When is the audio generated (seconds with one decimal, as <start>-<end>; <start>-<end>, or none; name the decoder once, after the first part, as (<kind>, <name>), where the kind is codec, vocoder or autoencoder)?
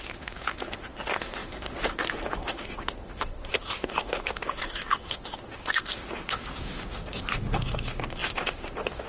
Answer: 0.0-9.1 (autoencoder, DAC-VAE)